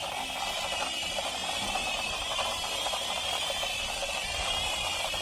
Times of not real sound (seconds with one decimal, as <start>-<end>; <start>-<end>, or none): none